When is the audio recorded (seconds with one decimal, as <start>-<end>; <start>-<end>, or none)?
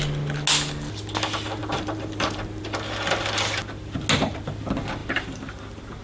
0.0-1.6; 2.6-5.0; 5.6-6.0